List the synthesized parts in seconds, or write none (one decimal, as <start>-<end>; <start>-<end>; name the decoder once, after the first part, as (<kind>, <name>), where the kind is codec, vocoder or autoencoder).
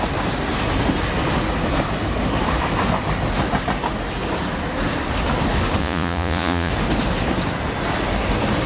5.8-6.7 (vocoder, Vocos)